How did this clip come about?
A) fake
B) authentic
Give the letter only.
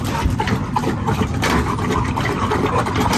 B